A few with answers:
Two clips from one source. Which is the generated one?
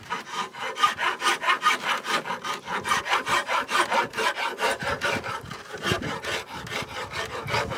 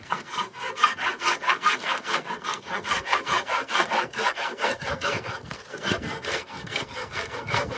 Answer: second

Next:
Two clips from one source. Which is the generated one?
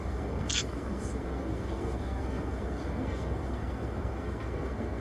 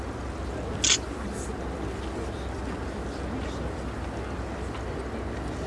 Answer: first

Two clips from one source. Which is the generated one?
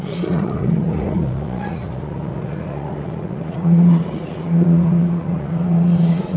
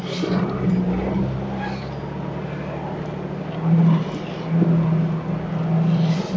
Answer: first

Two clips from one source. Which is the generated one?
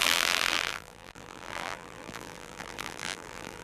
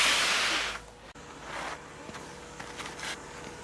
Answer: first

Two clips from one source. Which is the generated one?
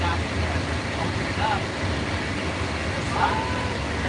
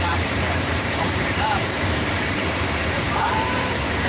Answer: second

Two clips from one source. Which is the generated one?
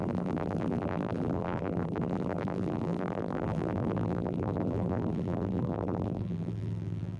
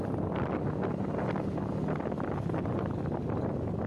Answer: first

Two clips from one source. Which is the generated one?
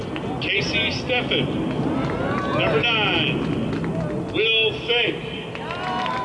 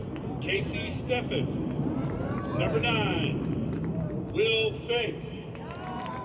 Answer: second